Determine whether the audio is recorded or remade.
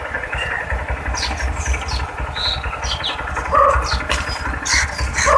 recorded